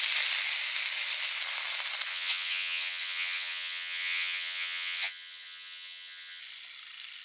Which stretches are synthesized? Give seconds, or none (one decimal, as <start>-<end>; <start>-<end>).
2.1-6.4